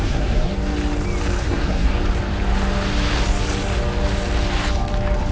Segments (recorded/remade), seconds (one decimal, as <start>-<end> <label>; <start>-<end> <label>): 0.0-0.5 remade; 0.5-1.4 recorded; 1.4-1.9 remade; 1.9-5.3 recorded